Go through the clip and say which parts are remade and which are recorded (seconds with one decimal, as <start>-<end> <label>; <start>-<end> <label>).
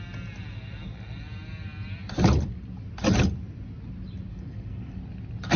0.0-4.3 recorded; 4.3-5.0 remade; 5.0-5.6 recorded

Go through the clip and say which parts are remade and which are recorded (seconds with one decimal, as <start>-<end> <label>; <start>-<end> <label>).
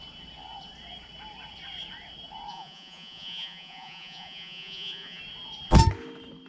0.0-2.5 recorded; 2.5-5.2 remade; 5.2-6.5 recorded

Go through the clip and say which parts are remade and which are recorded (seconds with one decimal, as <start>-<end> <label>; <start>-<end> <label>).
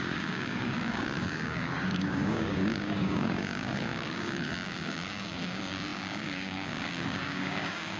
0.0-8.0 remade